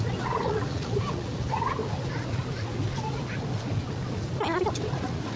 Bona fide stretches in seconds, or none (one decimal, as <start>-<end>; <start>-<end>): 1.8-5.0